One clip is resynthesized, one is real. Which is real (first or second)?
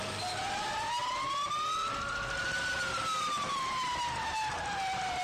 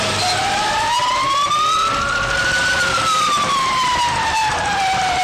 first